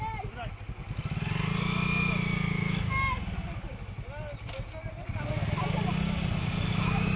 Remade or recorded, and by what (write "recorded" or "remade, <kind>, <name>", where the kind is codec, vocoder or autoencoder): recorded